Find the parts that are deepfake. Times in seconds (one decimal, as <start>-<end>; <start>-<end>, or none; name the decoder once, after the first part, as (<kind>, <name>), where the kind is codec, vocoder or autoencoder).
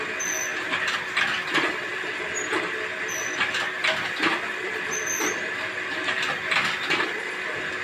0.5-1.3 (vocoder, BigVGAN v2); 1.9-6.4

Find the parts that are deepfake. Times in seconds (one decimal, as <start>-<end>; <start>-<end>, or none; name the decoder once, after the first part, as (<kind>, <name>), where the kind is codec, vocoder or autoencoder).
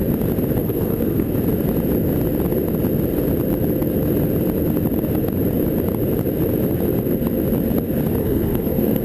0.6-1.3 (codec, SNAC); 8.2-9.0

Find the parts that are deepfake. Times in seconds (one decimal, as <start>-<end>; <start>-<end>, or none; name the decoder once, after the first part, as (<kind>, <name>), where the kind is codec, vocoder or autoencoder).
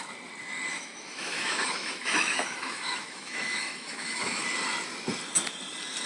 0.7-4.4 (autoencoder, DAC-VAE)